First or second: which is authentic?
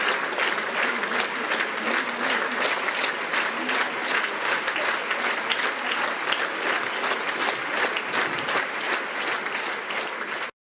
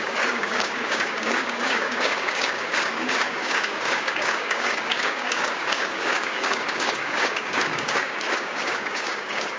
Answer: first